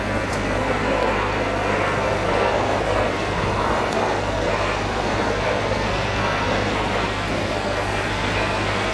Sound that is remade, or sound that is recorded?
remade